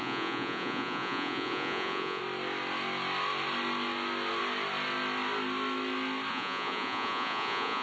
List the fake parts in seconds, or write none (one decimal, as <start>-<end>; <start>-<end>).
0.0-2.2; 6.3-7.8